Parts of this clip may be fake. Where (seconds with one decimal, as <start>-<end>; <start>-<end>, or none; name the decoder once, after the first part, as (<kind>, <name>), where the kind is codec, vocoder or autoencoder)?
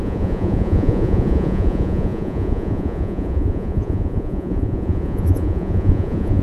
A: 0.0-6.4 (vocoder, Vocos)